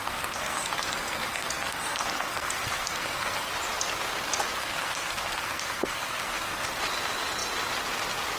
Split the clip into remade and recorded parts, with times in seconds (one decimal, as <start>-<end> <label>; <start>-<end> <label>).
0.0-3.5 remade; 3.5-4.6 recorded; 4.6-6.8 remade; 6.8-8.4 recorded